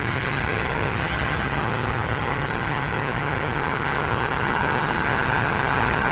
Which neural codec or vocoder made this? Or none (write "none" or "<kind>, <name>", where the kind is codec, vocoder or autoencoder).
vocoder, HiFi-GAN